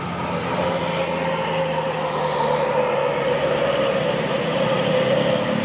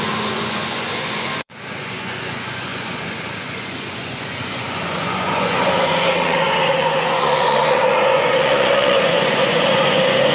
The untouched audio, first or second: first